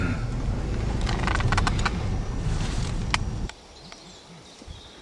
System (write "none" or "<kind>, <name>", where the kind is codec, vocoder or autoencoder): none